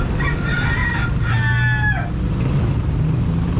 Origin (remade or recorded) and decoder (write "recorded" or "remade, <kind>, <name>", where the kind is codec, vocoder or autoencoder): recorded